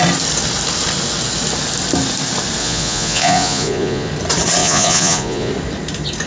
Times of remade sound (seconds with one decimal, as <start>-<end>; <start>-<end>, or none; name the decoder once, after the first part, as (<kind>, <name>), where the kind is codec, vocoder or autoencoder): 2.6-4.1 (vocoder, Vocos); 4.6-5.5